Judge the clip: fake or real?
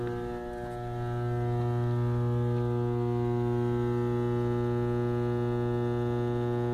real